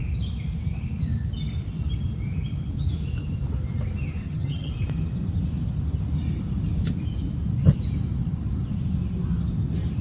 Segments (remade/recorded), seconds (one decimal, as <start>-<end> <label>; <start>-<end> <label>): 0.0-4.2 recorded; 4.2-4.7 remade; 4.7-10.0 recorded